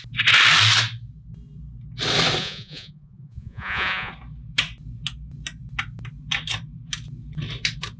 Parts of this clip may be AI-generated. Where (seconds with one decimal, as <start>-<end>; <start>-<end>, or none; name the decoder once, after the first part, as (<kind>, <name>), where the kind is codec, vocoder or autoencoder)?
2.4-4.1 (vocoder, Vocos)